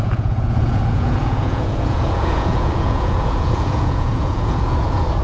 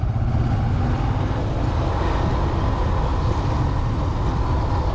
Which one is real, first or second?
second